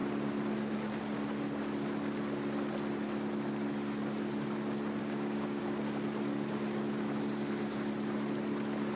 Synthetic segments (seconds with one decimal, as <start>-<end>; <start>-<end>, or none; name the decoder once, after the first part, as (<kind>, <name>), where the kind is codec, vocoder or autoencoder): 5.0-5.6 (codec, DAC)